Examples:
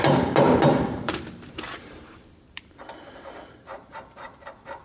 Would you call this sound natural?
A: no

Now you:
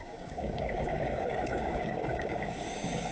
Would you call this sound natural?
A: no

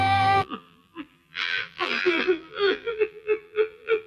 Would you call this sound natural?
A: no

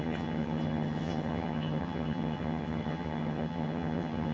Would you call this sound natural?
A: no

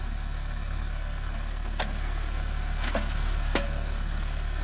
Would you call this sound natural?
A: no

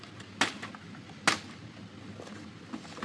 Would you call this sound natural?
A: yes